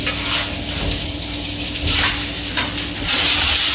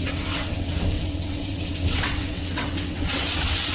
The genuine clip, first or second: first